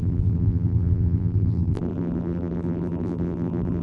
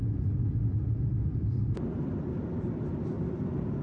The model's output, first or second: first